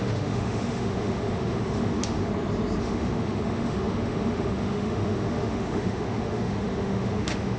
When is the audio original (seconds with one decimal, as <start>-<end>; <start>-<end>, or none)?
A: 2.3-2.8